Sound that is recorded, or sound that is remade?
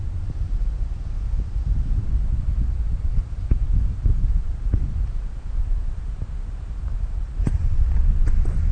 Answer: recorded